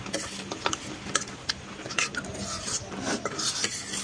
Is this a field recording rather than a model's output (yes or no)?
yes